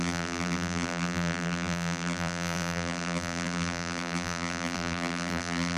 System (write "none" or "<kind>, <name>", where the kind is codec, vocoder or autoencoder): vocoder, BigVGAN v2